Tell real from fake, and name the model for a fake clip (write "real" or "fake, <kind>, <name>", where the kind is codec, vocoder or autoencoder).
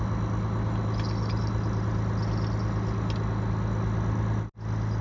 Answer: real